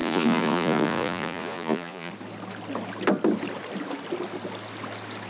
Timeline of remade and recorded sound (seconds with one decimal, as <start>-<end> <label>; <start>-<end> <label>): 0.0-2.1 remade; 2.1-5.3 recorded